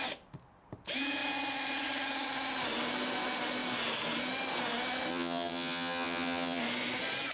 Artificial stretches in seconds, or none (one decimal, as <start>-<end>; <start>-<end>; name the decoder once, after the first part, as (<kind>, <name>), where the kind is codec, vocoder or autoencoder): 5.1-6.6 (vocoder, HiFi-GAN)